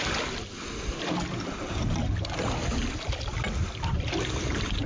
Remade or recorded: recorded